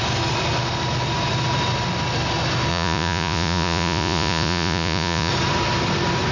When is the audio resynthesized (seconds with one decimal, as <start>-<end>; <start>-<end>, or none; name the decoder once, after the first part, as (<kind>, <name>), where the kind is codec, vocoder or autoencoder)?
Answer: 2.7-5.3 (vocoder, Vocos)